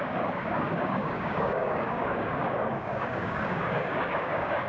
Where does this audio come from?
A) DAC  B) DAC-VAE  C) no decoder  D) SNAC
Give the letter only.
A